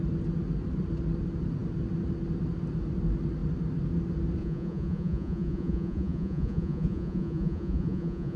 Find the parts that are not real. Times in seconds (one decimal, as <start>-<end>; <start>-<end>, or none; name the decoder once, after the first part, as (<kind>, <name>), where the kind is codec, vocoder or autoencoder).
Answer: 4.4-8.4 (vocoder, Vocos)